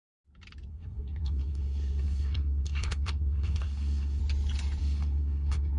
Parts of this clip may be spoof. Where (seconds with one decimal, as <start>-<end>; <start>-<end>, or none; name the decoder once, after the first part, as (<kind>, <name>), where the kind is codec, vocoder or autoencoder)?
0.7-4.2 (codec, SNAC); 4.8-5.8